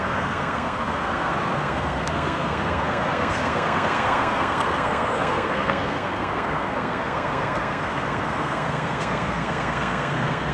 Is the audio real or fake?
fake